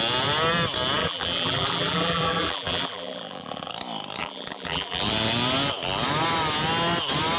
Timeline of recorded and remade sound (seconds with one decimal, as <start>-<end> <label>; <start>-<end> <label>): 0.0-1.0 recorded; 1.0-3.7 remade; 3.7-4.2 recorded; 4.2-5.0 remade; 5.0-7.4 recorded